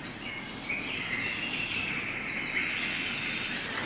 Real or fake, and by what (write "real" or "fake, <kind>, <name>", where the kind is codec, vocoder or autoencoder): real